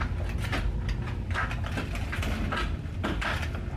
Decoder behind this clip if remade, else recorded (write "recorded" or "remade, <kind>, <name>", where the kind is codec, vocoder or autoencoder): recorded